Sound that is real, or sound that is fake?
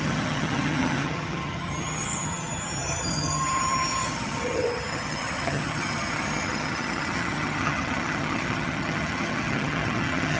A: fake